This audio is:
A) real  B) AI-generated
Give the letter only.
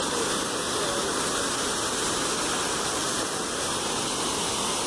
A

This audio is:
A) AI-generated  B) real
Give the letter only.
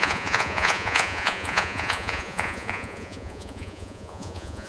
A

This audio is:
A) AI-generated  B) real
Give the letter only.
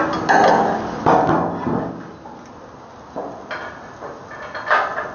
B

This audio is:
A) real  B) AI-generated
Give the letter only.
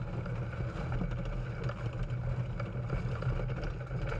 A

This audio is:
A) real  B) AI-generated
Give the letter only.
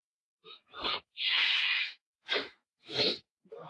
B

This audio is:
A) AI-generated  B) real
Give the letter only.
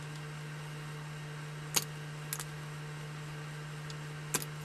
B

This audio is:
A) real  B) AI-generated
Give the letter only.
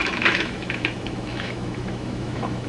B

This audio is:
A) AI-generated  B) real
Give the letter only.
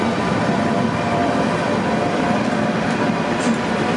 A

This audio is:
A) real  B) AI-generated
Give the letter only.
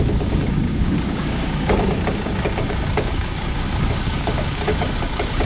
B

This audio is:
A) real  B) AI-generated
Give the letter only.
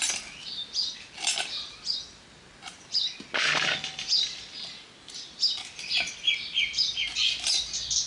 A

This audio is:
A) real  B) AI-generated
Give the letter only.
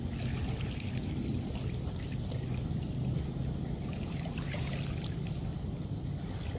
A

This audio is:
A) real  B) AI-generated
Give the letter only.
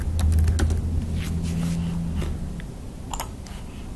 A